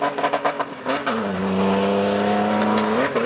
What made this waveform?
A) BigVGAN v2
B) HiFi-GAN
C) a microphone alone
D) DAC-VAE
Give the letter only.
C